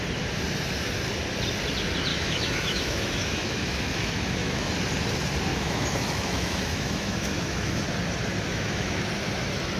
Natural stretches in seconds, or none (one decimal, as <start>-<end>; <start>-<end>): 0.0-2.1; 4.7-5.5; 7.8-8.5; 9.1-9.8